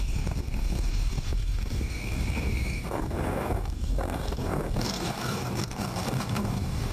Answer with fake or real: fake